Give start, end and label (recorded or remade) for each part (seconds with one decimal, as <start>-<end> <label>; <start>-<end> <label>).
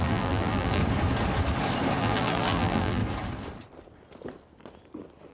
0.0-0.8 remade; 0.8-2.0 recorded; 2.0-3.0 remade; 3.0-5.3 recorded